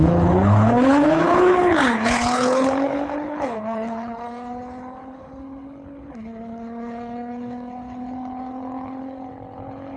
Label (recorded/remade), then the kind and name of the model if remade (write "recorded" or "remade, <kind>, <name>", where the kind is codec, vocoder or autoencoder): remade, codec, HILCodec